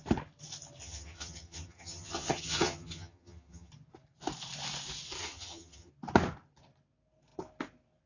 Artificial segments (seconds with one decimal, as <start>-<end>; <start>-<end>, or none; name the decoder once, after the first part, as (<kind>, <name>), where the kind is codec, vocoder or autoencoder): 0.8-3.7 (vocoder, HiFi-GAN); 5.2-5.9